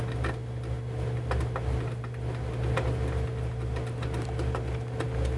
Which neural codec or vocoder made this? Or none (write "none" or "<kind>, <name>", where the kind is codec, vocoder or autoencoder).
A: none